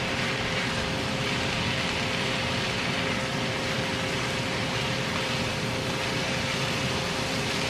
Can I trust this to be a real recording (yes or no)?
no